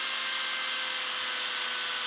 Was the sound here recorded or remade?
recorded